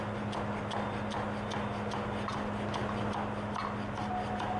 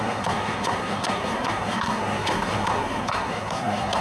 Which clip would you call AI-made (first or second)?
second